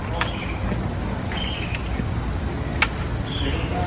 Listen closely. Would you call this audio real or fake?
real